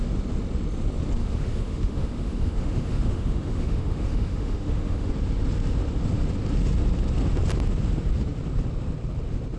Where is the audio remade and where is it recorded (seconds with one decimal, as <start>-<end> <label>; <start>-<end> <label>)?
0.0-1.2 recorded; 1.2-5.1 remade; 5.1-9.6 recorded